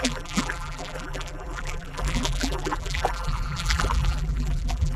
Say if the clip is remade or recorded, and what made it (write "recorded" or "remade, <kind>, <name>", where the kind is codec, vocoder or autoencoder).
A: remade, vocoder, BigVGAN v2